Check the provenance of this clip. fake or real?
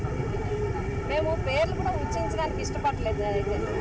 real